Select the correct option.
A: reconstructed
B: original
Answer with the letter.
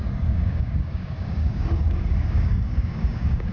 A